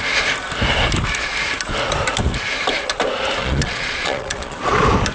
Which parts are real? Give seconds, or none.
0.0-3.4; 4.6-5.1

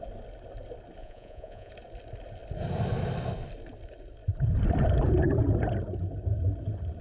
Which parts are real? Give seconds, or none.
0.0-1.0; 1.7-7.0

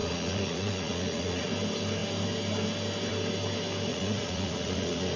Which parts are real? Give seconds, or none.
1.5-3.9